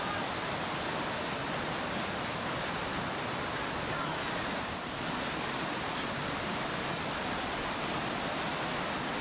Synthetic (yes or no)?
no